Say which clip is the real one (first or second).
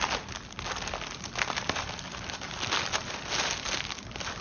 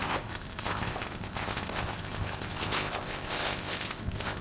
first